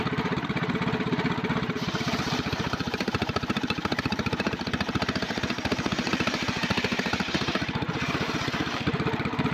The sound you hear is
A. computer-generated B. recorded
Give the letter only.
A